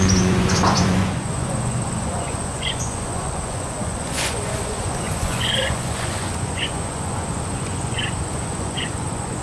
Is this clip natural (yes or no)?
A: no